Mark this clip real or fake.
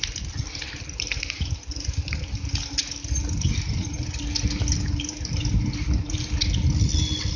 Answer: real